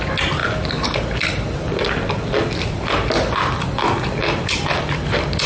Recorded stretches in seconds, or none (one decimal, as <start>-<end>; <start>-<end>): 0.0-5.5